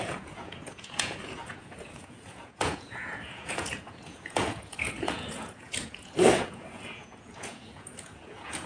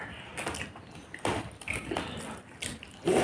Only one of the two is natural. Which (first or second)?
second